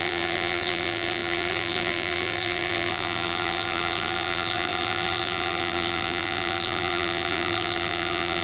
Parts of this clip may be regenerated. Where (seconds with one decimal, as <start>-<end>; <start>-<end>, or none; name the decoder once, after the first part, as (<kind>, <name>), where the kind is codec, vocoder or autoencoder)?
0.0-8.4 (vocoder, BigVGAN v2)